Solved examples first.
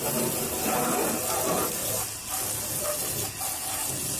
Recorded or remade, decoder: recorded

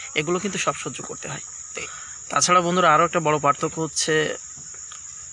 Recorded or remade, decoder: recorded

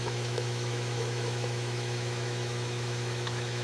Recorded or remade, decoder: remade, autoencoder, DAC-VAE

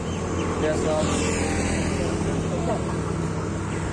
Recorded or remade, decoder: recorded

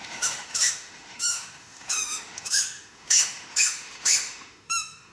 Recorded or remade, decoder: remade, autoencoder, DAC-VAE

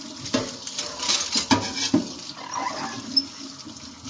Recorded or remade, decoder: recorded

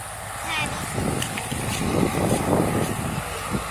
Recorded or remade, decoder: recorded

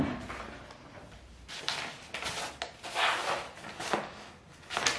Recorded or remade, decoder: recorded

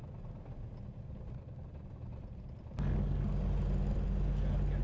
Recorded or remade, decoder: recorded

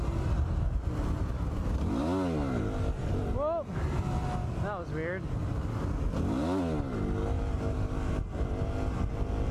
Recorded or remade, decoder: recorded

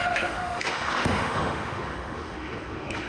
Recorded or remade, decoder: remade, autoencoder, DAC-VAE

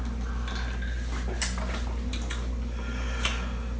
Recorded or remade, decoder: recorded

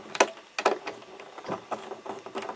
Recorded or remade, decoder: recorded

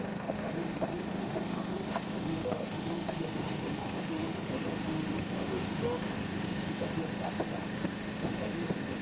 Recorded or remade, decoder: remade, autoencoder, DAC-VAE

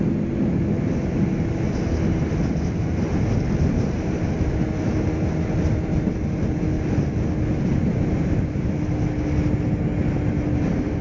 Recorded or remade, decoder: recorded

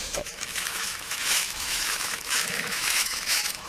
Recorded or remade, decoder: remade, autoencoder, DAC-VAE